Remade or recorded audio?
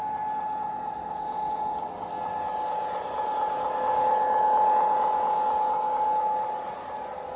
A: recorded